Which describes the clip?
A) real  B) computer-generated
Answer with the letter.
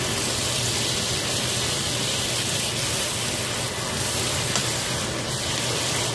A